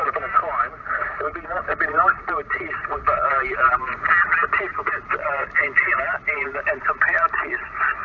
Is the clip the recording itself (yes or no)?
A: yes